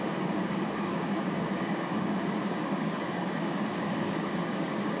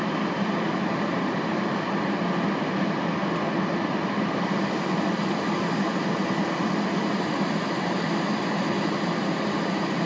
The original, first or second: second